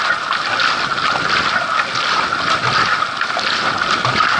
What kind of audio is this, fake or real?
real